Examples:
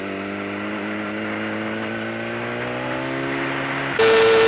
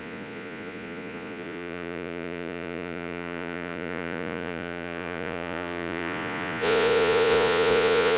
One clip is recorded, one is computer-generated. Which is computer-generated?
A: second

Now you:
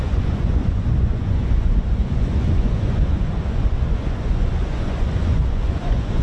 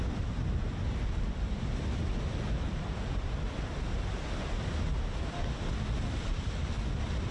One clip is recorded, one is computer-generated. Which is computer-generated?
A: first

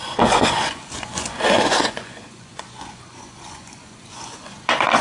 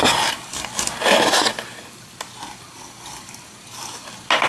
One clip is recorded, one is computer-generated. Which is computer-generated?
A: first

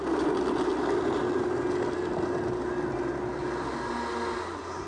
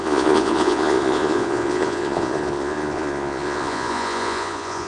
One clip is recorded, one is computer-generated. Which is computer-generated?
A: second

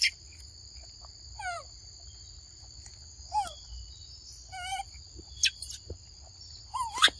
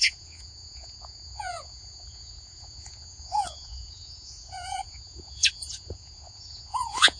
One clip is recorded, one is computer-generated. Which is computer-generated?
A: second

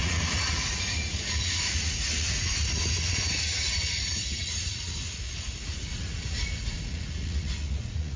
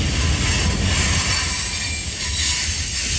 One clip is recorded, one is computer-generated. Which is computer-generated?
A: first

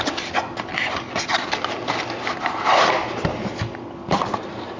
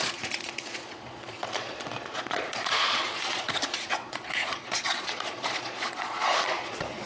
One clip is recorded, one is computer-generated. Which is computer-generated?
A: second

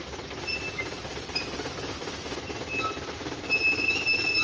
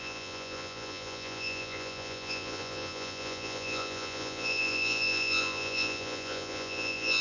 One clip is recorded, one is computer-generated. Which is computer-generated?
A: second